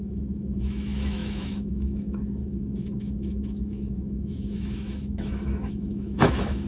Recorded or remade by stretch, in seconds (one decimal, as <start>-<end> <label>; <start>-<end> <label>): 0.0-6.7 remade